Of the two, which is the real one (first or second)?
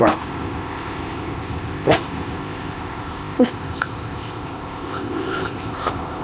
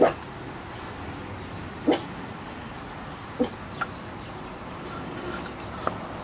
second